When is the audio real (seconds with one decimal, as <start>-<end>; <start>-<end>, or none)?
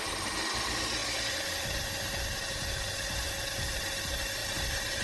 0.0-5.0